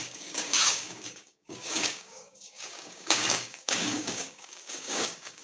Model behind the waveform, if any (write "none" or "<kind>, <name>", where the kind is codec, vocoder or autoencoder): codec, DAC